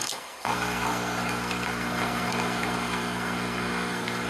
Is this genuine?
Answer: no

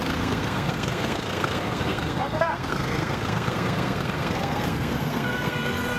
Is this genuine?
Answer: no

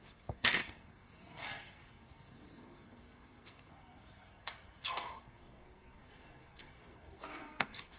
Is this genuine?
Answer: no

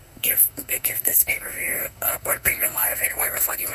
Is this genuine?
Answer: no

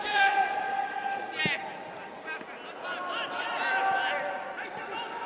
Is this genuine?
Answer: yes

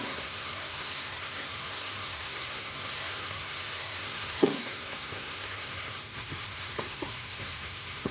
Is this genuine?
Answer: no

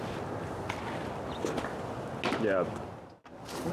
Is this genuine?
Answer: yes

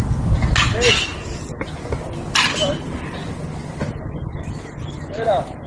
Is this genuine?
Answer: yes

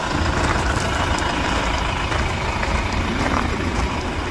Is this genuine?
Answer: yes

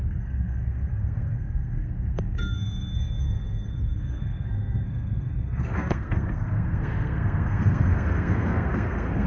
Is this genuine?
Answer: no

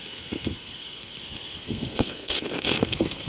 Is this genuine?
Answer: no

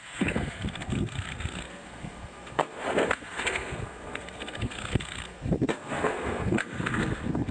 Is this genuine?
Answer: no